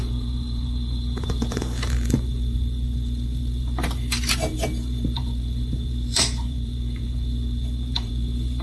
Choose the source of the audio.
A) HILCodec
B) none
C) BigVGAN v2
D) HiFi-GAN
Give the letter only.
C